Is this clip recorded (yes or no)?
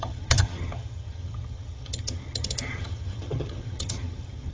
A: no